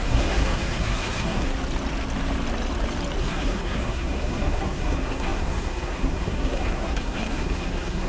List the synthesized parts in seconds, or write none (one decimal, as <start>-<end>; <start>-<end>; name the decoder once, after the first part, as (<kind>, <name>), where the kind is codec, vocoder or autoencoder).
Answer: 0.0-1.5 (codec, SNAC); 3.2-8.1